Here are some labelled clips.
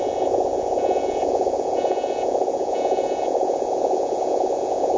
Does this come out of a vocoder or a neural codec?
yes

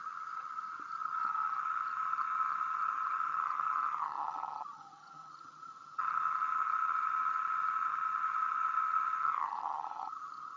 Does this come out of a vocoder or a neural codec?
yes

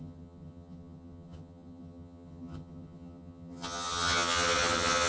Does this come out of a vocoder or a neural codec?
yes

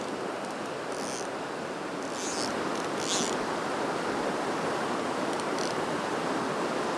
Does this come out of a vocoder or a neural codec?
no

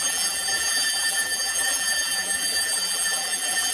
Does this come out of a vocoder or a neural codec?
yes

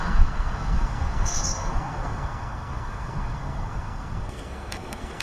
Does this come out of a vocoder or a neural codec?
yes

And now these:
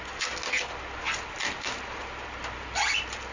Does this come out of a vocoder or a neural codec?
no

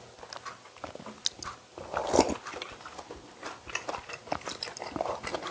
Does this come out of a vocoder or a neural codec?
no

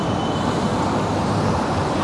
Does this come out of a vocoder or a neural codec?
yes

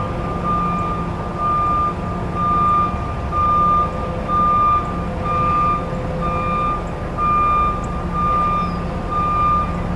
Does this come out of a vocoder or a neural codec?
no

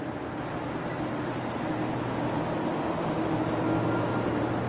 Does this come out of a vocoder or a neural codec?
no